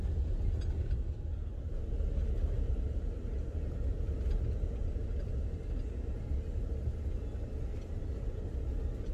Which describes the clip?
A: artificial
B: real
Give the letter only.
B